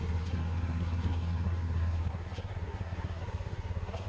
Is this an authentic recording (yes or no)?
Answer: no